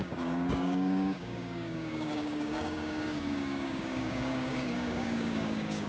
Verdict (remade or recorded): remade